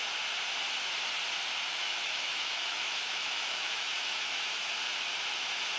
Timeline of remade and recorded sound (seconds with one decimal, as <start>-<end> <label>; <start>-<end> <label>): 0.0-1.6 recorded; 1.6-4.5 remade; 4.5-5.8 recorded